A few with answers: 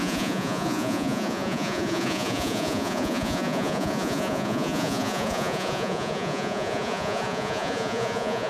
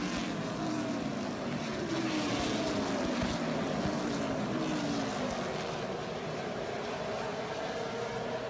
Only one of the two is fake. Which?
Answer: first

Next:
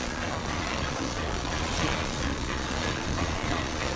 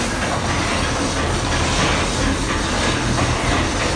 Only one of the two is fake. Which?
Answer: first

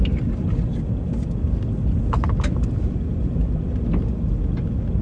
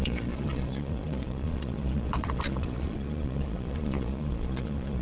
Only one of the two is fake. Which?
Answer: second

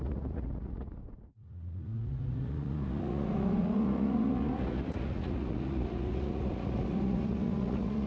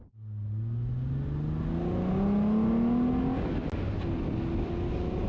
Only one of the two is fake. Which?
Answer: first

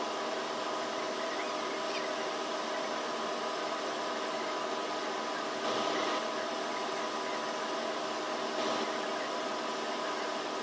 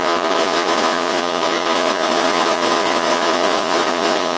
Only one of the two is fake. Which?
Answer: second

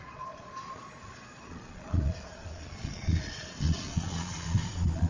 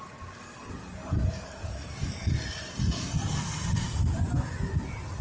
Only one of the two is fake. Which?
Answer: first